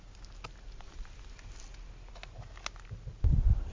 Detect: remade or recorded recorded